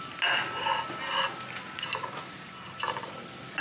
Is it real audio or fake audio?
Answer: real